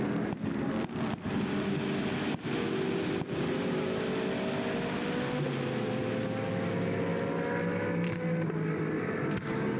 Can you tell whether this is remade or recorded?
recorded